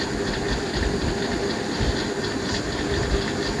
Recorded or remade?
recorded